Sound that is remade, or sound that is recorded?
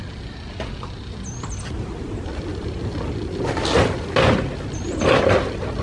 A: recorded